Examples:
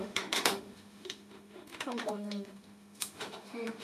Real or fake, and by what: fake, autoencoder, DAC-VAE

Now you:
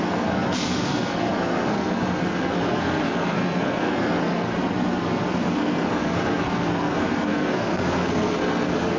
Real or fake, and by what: fake, codec, SNAC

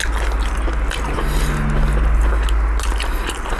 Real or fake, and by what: real